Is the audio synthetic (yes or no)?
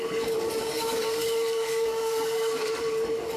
yes